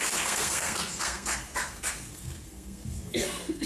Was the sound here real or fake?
fake